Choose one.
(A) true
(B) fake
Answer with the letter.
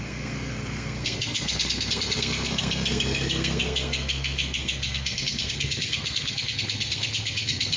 B